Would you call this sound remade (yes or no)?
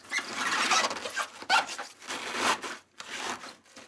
no